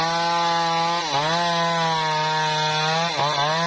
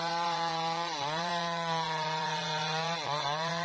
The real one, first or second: first